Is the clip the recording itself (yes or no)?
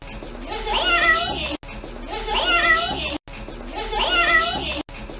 yes